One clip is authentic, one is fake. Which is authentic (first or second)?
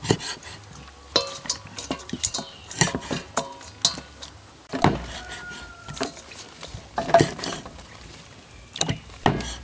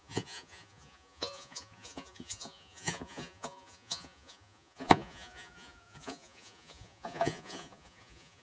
first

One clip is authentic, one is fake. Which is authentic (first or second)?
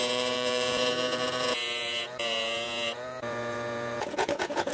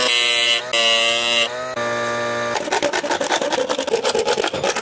second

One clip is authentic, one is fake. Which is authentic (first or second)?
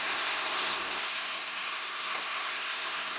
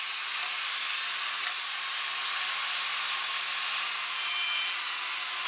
second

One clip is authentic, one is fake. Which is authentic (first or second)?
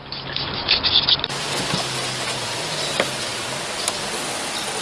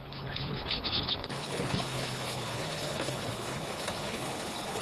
first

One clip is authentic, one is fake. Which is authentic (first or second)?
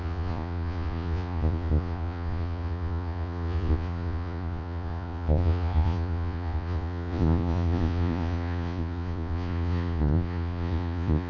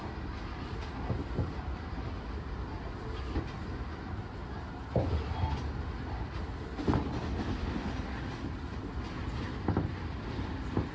second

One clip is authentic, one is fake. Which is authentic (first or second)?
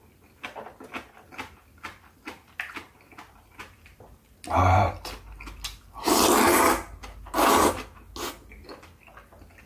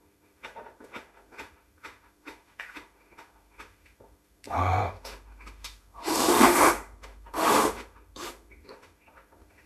first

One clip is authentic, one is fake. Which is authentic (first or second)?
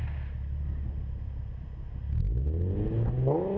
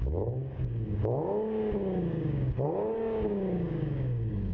first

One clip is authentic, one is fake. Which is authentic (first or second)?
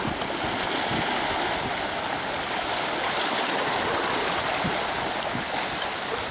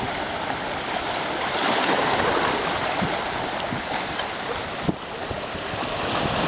first